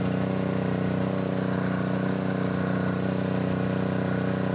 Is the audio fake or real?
real